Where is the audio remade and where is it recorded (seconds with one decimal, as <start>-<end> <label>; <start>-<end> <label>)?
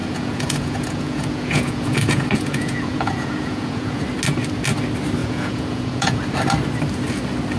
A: 0.0-4.0 remade; 4.0-5.2 recorded; 5.2-6.2 remade; 6.2-7.6 recorded